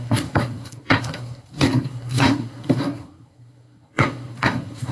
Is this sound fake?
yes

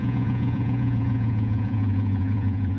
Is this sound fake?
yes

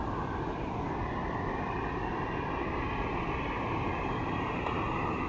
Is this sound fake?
no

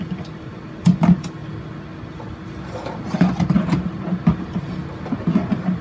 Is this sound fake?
no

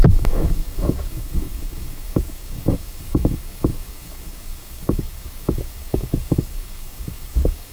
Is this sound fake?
yes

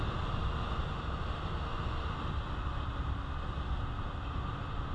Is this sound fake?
no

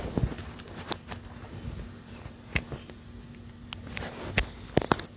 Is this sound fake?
no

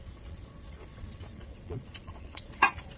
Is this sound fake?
yes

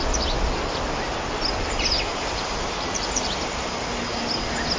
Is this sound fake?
no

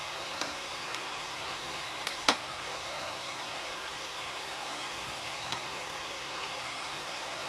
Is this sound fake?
yes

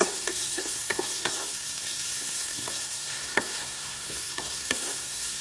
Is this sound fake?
yes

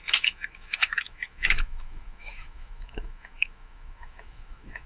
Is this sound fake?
yes